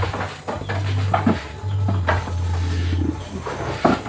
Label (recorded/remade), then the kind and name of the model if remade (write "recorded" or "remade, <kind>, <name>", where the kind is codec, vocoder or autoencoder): recorded